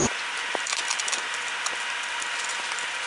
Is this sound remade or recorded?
recorded